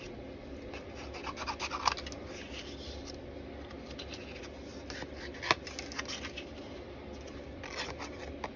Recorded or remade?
recorded